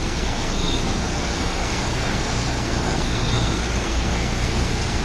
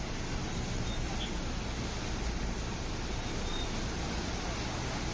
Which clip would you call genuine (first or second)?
second